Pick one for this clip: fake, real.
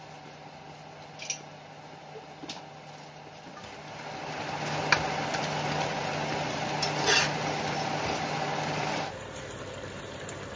real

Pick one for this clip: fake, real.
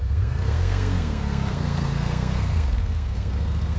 fake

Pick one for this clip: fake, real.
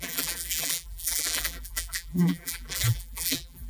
fake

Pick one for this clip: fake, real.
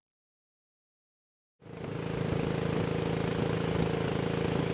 real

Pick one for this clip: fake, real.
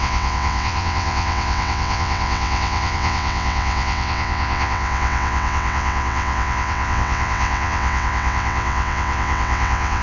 fake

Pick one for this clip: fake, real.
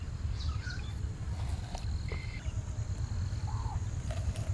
real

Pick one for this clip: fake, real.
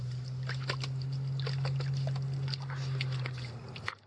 real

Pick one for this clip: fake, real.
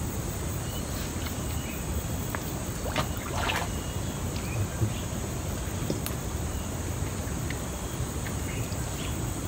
real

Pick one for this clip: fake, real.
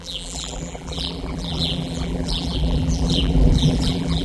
fake